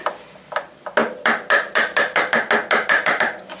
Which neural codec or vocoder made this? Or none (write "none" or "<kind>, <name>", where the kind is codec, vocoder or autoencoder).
none